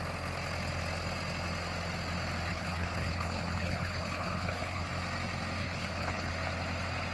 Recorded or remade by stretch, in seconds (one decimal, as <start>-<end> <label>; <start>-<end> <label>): 0.0-2.5 recorded; 2.5-4.9 remade; 4.9-5.6 recorded; 5.6-6.3 remade; 6.3-7.1 recorded